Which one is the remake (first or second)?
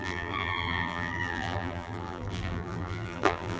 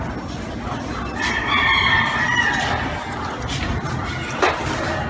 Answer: first